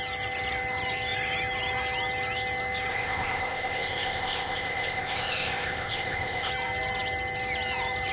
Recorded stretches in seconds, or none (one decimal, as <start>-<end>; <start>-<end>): 0.0-2.9; 6.5-8.1